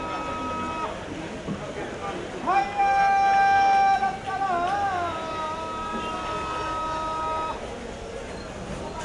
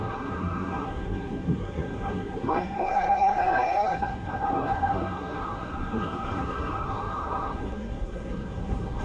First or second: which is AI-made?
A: second